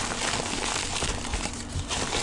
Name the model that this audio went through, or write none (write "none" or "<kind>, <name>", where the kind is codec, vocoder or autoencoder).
none